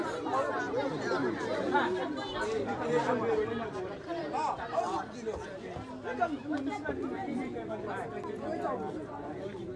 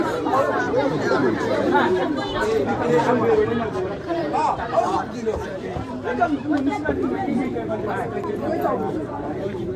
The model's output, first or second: second